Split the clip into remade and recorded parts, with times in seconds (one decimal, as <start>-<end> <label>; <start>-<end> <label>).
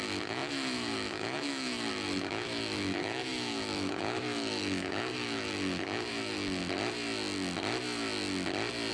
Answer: 0.0-6.6 remade; 6.6-8.9 recorded